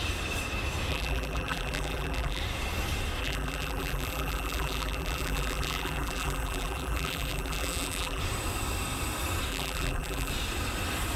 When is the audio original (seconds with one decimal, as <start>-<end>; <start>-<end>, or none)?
0.0-0.9; 2.4-3.2; 8.2-9.5; 10.3-11.2